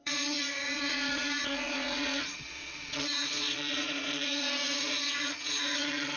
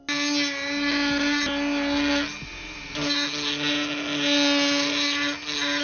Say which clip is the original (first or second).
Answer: second